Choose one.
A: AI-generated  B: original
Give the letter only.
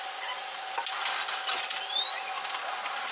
B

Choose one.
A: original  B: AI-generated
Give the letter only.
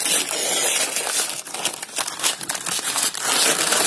A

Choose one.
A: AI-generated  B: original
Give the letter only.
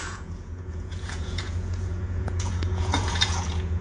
A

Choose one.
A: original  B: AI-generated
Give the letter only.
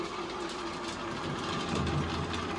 A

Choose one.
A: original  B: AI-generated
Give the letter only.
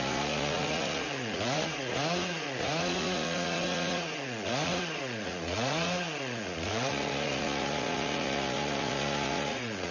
B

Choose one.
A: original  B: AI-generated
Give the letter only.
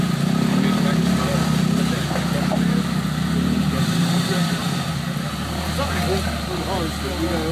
A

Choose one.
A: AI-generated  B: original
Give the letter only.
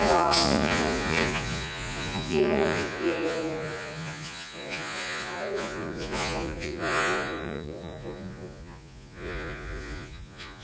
A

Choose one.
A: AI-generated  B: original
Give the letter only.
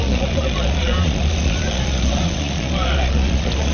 A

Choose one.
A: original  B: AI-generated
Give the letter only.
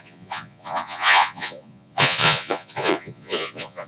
B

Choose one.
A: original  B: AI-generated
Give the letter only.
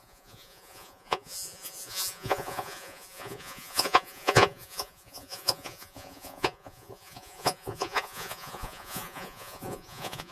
B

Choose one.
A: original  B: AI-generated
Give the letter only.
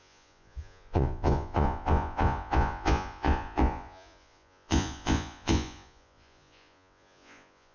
B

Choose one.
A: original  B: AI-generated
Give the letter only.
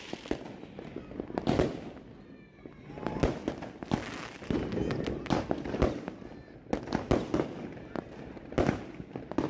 A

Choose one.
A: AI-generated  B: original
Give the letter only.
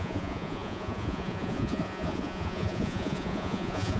A